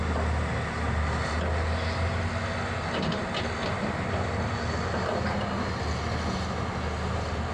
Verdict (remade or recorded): recorded